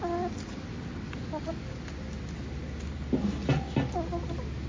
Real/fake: real